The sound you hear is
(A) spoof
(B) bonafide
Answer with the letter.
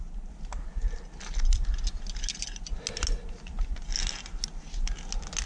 B